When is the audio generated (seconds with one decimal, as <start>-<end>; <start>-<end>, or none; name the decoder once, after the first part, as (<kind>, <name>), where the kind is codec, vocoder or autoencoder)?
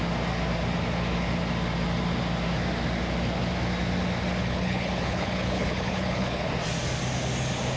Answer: 4.4-6.5 (codec, HILCodec)